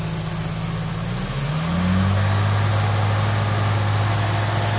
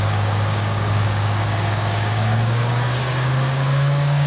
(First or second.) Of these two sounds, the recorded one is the first